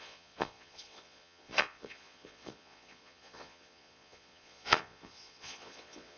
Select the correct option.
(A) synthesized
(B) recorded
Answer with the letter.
A